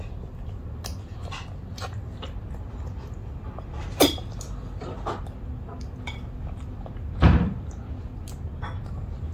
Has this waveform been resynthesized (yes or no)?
no